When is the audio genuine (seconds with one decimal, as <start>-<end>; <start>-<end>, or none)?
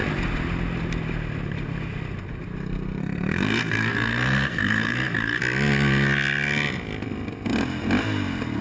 0.0-3.0; 5.4-8.6